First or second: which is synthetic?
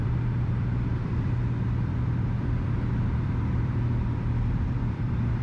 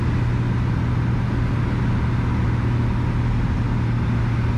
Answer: first